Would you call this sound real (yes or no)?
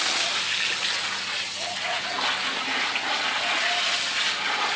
yes